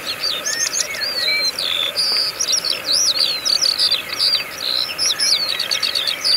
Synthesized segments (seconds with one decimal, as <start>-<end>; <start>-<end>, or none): 0.0-1.3; 5.1-6.4